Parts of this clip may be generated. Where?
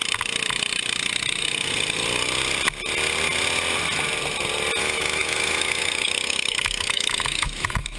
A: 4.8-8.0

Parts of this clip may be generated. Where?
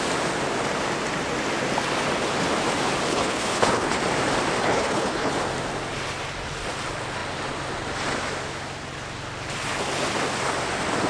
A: 3.1-4.0; 4.6-5.3